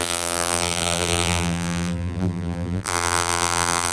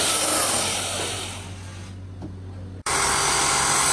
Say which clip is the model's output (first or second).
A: first